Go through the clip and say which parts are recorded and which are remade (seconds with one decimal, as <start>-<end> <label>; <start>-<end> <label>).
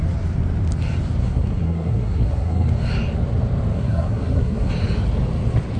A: 0.0-1.2 recorded; 1.2-2.7 remade; 2.7-3.7 recorded; 3.7-4.7 remade; 4.7-5.8 recorded